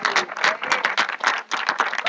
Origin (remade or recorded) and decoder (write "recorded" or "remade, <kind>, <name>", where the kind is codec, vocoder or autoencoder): recorded